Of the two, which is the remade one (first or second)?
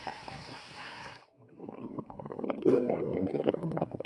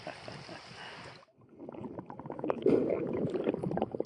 first